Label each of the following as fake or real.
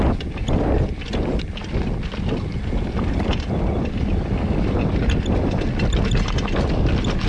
real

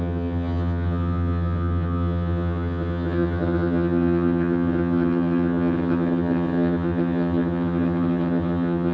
fake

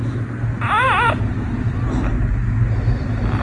real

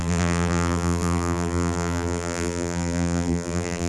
fake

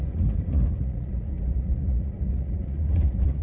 fake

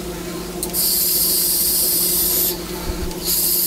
real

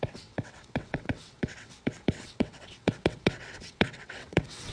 fake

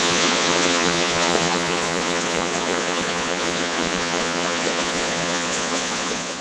fake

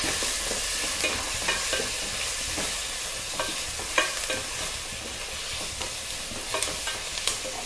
real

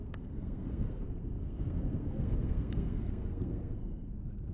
fake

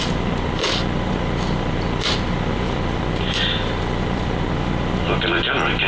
fake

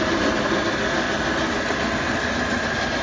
real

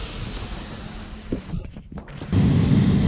real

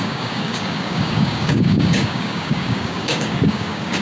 fake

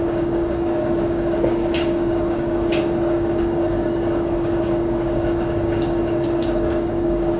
fake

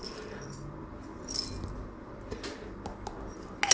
real